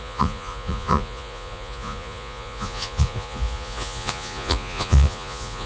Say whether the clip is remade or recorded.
remade